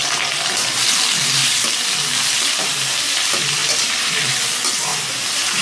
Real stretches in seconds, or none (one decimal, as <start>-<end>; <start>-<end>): 0.0-3.6; 4.3-5.6